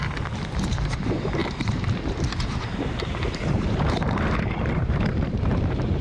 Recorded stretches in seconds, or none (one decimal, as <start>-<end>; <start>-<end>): none